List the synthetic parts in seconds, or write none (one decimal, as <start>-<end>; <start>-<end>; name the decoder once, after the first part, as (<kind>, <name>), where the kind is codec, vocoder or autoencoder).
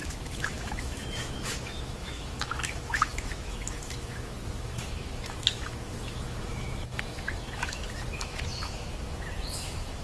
0.0-10.0 (autoencoder, DAC-VAE)